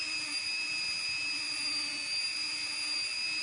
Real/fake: fake